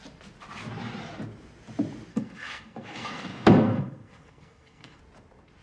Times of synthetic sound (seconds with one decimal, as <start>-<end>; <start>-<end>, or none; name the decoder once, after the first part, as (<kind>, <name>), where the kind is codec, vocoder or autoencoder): 2.1-5.0 (codec, SNAC)